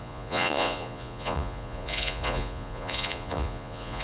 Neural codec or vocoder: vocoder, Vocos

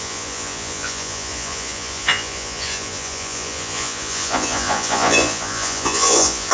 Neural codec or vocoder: vocoder, Vocos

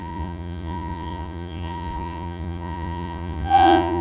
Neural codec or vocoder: vocoder, Vocos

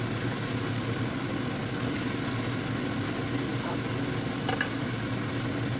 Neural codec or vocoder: none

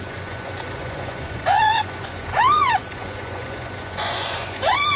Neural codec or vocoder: vocoder, Vocos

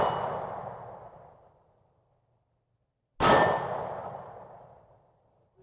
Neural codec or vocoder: none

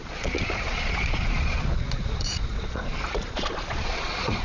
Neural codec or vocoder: vocoder, Vocos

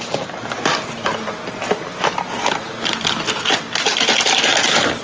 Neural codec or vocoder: none